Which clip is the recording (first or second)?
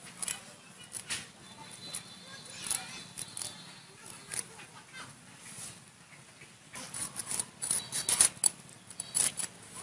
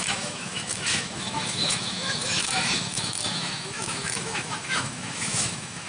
first